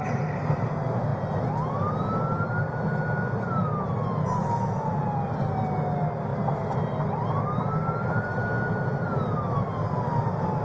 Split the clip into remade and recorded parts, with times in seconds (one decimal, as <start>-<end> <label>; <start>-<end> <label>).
0.0-4.4 recorded; 4.4-5.3 remade; 5.3-10.6 recorded